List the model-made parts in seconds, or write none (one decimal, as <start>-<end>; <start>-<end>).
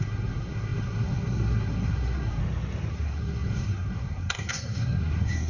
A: 0.0-2.4; 2.9-5.5